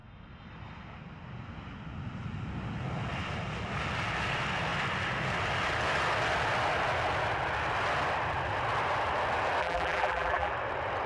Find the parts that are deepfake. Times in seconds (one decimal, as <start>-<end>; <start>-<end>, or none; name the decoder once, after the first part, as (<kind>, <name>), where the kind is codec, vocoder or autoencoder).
9.6-10.5 (vocoder, BigVGAN v2)